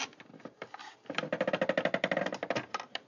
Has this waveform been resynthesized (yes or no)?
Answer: no